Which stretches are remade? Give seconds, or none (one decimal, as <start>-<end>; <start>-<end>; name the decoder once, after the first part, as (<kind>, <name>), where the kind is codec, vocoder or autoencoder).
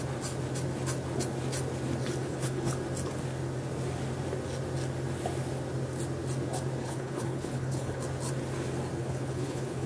2.2-2.7 (codec, HILCodec); 6.8-8.0; 9.0-9.9